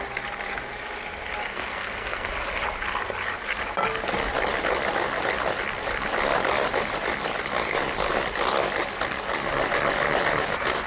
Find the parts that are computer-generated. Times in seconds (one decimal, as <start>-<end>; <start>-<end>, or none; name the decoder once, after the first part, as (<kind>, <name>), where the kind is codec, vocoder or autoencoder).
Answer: 1.4-2.3 (codec, SNAC)